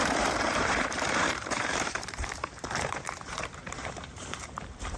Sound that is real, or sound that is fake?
fake